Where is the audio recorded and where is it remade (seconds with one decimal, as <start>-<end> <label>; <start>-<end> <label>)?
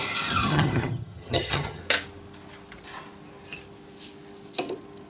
0.0-0.4 recorded; 0.4-1.8 remade; 1.8-5.1 recorded